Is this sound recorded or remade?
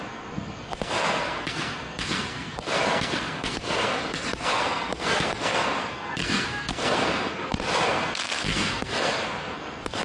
remade